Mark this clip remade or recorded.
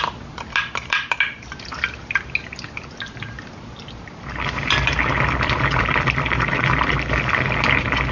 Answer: recorded